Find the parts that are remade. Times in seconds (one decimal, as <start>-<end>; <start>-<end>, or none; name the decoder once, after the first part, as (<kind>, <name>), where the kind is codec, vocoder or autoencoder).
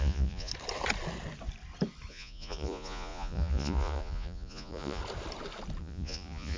0.0-0.5 (vocoder, Vocos); 2.1-5.0; 5.8-6.6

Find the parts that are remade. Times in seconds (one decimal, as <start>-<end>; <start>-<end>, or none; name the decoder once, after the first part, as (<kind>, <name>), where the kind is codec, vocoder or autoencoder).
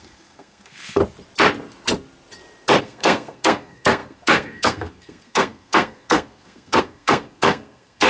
0.0-1.0 (codec, SNAC); 2.8-8.1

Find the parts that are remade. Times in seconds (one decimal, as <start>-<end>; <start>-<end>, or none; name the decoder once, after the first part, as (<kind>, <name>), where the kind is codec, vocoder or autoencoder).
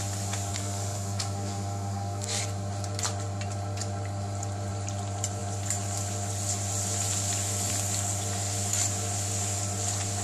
0.5-2.4 (codec, SNAC)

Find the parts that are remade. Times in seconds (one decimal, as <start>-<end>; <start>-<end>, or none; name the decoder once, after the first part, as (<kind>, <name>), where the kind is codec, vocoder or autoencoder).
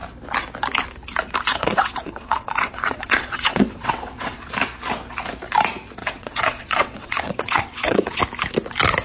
1.5-4.5 (vocoder, WaveNeXt); 6.0-8.2